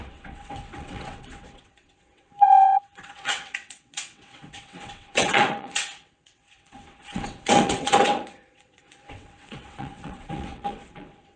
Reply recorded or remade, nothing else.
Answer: remade